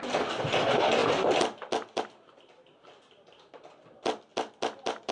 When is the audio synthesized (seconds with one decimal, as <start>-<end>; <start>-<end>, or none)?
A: none